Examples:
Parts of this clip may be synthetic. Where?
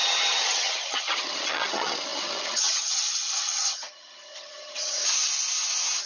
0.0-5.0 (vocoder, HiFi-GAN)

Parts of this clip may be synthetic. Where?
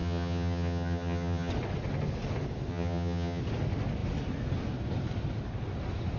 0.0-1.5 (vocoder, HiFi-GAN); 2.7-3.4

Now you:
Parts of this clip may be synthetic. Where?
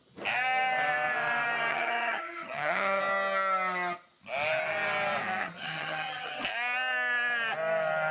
1.7-3.0 (vocoder, HiFi-GAN); 5.4-6.4